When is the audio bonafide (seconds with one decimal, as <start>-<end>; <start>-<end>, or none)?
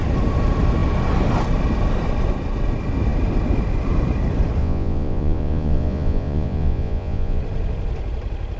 0.0-4.6; 7.4-8.6